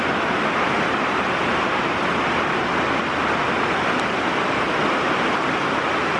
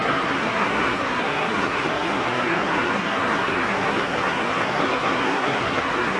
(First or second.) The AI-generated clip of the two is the second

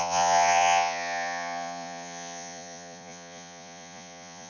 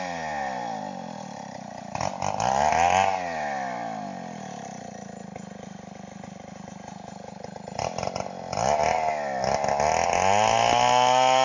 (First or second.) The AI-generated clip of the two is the first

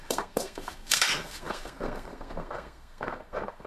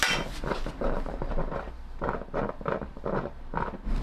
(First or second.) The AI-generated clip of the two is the first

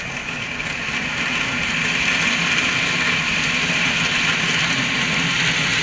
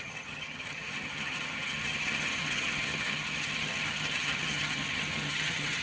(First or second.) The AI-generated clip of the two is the second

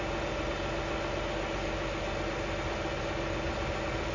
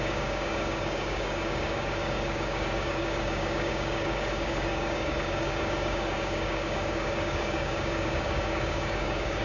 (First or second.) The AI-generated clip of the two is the second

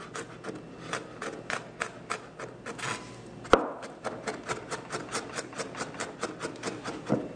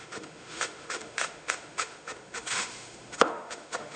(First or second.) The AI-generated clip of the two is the second